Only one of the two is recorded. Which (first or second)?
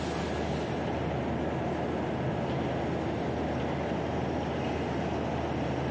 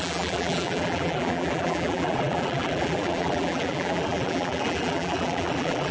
first